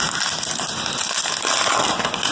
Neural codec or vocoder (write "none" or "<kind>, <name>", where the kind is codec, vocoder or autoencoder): none